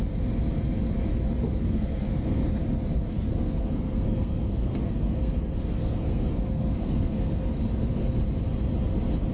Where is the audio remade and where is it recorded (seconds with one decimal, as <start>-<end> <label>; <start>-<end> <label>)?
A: 0.0-1.6 recorded; 1.6-2.5 remade; 2.5-3.1 recorded; 3.1-8.2 remade; 8.2-9.3 recorded